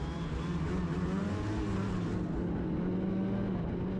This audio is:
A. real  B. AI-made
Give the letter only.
A